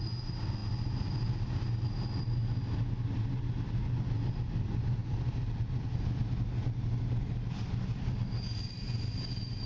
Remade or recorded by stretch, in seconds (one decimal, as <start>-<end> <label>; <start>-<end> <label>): 0.0-9.7 recorded